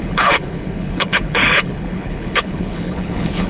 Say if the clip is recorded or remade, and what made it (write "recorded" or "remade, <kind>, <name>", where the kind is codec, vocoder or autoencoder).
remade, codec, HILCodec